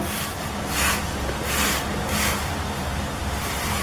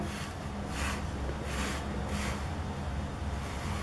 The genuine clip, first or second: second